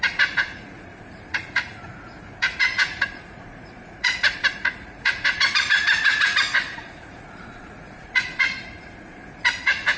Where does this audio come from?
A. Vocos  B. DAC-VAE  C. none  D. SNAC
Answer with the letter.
A